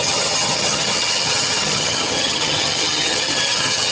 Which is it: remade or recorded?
remade